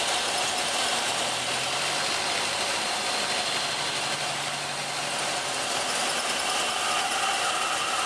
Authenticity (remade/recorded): recorded